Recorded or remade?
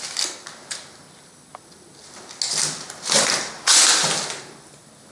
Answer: recorded